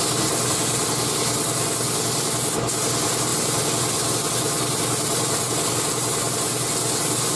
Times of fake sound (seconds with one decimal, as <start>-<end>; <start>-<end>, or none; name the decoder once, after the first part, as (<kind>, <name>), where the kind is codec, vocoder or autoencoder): none

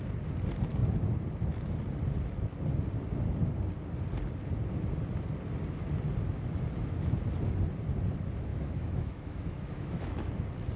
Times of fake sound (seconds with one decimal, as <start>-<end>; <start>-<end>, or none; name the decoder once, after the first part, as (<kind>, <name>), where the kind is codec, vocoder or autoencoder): 8.5-10.3 (autoencoder, DAC-VAE)